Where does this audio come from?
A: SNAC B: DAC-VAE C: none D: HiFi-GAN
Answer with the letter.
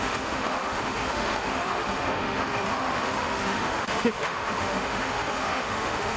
B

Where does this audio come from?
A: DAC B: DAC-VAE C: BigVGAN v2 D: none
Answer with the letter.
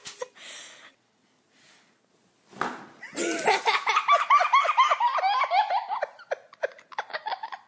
D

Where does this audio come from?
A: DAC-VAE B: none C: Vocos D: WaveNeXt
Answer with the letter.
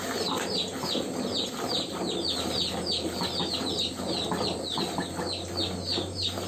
B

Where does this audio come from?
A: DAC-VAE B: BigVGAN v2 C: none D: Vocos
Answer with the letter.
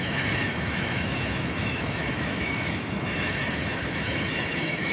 A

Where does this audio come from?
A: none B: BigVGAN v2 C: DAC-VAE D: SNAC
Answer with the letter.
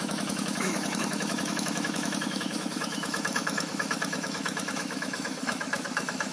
C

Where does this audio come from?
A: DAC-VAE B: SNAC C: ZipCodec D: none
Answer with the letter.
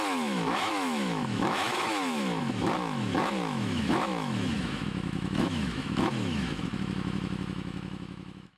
A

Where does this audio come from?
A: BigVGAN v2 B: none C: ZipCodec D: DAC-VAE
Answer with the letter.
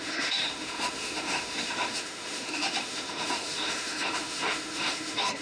D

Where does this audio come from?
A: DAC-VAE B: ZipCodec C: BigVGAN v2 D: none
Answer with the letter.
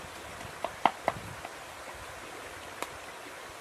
D